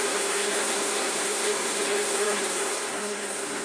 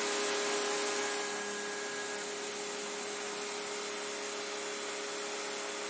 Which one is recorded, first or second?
second